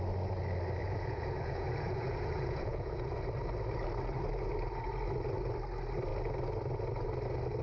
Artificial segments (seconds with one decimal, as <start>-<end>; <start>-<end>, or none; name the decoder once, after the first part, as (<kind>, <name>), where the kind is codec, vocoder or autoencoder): 0.8-3.2 (vocoder, Vocos)